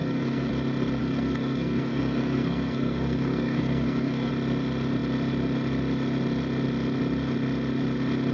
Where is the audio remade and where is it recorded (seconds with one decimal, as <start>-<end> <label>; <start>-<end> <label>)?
0.0-0.5 remade; 0.5-1.0 recorded; 1.0-4.3 remade; 4.3-8.3 recorded